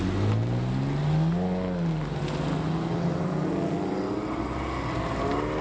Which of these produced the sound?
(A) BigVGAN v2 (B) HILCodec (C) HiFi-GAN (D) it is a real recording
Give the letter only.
D